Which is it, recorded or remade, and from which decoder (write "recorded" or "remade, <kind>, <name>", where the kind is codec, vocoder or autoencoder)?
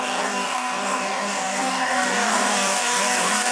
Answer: remade, codec, DAC